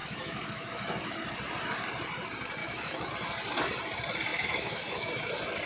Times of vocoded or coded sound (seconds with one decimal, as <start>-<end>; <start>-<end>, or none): 0.0-1.1; 2.6-3.1; 4.3-5.1